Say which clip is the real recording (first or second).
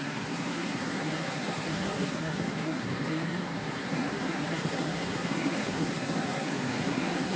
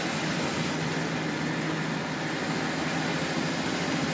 second